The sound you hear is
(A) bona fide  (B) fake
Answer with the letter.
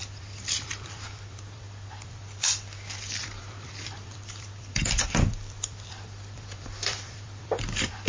B